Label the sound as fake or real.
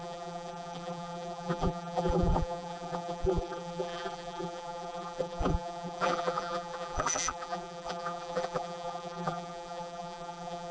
fake